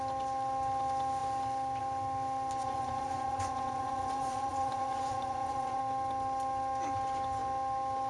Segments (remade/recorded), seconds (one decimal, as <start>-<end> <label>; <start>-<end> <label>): 0.0-2.6 recorded; 2.6-5.8 remade; 5.8-8.1 recorded